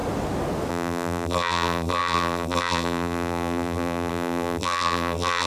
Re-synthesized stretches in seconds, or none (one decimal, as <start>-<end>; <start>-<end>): 0.7-5.5